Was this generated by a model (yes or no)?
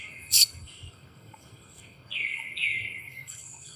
yes